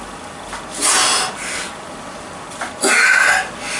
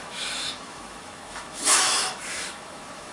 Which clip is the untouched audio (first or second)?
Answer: first